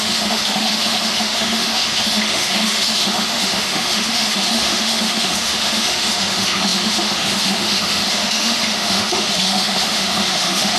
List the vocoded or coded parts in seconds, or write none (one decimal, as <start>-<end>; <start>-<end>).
0.0-10.8